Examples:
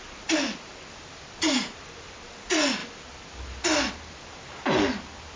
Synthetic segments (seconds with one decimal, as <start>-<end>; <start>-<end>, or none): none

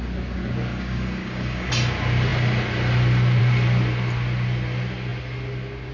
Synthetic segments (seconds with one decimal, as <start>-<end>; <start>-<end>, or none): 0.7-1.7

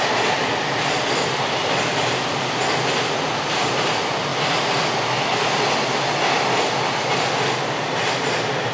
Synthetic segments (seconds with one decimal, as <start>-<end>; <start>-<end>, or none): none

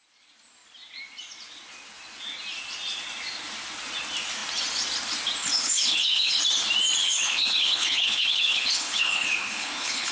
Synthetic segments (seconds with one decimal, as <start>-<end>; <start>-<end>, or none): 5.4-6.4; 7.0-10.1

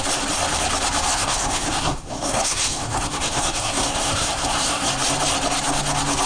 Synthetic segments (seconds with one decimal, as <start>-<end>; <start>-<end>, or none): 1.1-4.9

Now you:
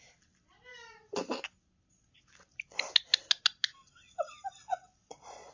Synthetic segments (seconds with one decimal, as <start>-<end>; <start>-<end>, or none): 4.7-5.5

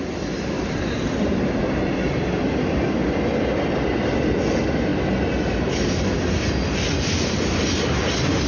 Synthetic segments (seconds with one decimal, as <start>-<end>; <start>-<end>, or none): none

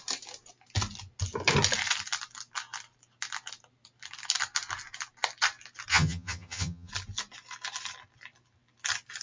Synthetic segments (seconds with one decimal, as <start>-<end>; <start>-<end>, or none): 5.9-6.9